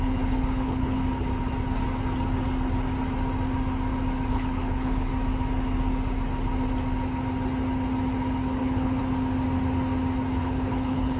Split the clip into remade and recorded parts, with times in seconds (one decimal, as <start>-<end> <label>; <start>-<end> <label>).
0.0-1.0 remade; 1.0-4.3 recorded; 4.3-5.1 remade; 5.1-8.6 recorded; 8.6-9.0 remade; 9.0-10.4 recorded; 10.4-11.2 remade